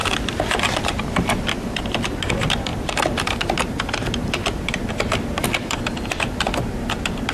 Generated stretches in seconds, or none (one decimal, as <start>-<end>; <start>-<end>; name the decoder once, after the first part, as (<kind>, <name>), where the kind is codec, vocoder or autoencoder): 0.8-7.3 (vocoder, BigVGAN v2)